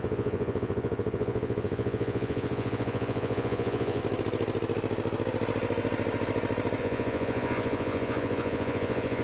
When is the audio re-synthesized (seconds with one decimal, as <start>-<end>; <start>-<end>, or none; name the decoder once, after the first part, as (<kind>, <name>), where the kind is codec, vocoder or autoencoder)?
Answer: 0.0-4.0 (vocoder, Vocos); 6.8-9.2